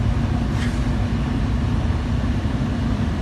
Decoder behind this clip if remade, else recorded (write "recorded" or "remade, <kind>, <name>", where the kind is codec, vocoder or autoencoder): recorded